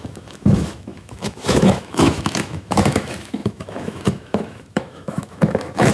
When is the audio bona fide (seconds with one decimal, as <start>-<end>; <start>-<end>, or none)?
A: none